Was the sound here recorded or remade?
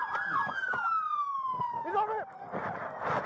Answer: recorded